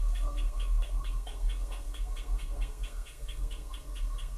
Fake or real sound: fake